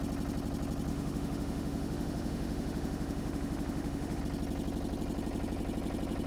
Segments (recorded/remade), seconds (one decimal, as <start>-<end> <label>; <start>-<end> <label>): 0.0-0.9 recorded; 0.9-4.2 remade; 4.2-6.3 recorded